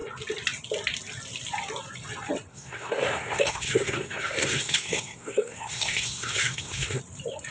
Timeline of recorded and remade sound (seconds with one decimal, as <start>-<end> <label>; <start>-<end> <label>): 0.0-2.5 recorded; 2.5-7.0 remade; 7.0-7.5 recorded